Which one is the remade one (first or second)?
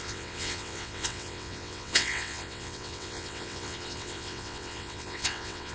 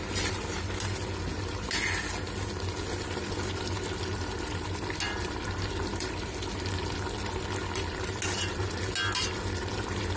first